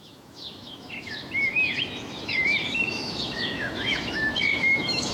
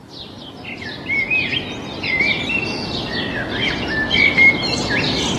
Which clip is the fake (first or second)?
first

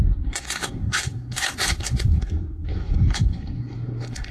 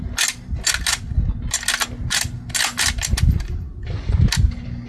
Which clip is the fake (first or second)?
first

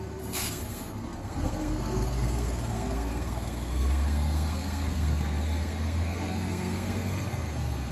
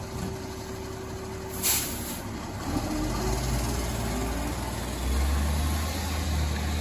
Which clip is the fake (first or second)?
first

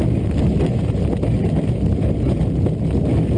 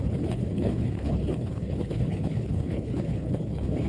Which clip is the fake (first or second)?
second